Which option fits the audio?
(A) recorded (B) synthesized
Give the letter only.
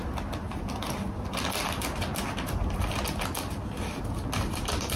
A